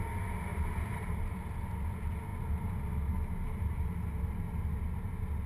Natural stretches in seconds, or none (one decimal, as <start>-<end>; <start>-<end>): 0.0-0.5; 1.3-5.5